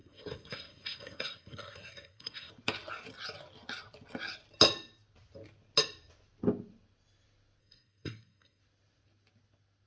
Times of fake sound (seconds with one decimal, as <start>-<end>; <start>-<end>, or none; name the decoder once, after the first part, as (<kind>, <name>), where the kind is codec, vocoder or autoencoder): 0.0-2.5 (codec, SNAC); 7.6-8.6